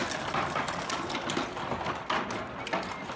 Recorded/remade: recorded